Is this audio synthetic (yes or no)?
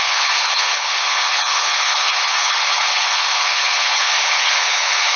yes